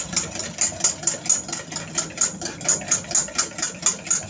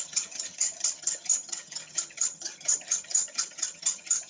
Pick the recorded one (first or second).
first